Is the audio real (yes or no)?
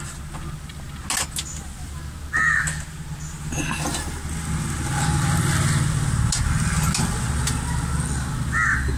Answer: yes